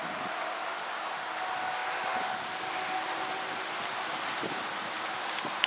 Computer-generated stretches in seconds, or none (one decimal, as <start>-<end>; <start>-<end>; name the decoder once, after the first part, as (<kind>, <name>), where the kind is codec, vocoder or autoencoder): none